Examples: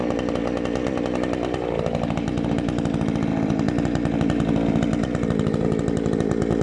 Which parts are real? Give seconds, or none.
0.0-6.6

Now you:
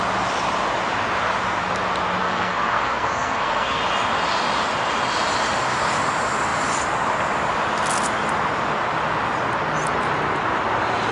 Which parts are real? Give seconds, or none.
0.0-2.2; 3.8-11.1

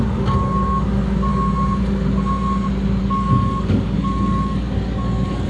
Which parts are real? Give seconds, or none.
1.3-3.0

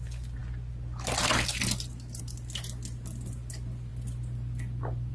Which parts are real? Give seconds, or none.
0.0-5.1